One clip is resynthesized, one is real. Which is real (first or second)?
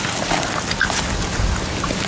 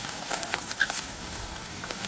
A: first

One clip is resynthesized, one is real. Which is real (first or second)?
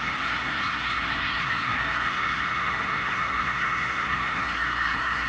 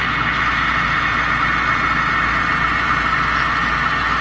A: second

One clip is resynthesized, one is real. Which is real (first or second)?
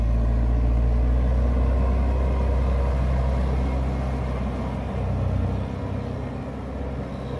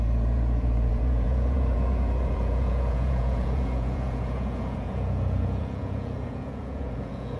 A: first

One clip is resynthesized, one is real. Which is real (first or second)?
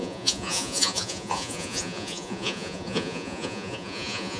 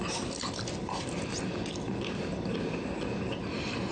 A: second